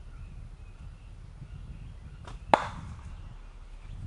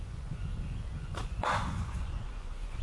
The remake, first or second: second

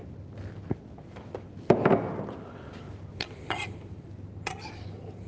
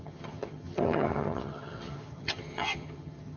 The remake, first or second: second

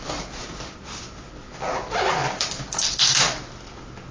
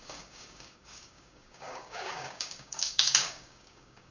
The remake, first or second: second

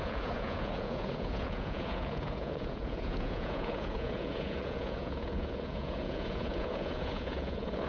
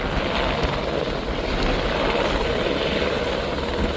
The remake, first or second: first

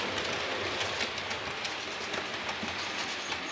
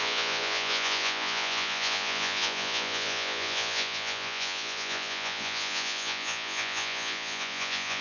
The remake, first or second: second